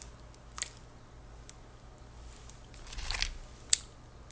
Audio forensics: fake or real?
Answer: real